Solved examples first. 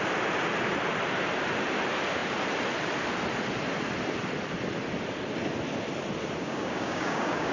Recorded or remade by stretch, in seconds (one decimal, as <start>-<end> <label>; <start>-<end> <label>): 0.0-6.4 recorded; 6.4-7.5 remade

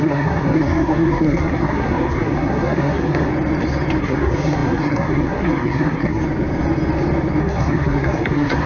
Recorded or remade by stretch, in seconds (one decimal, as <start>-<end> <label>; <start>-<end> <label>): 0.0-3.3 remade; 3.3-4.0 recorded; 4.0-6.2 remade; 6.2-7.4 recorded; 7.4-8.7 remade

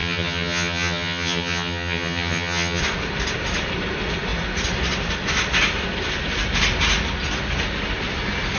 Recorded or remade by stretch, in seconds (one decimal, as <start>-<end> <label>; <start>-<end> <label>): 0.0-2.8 remade; 2.8-8.6 recorded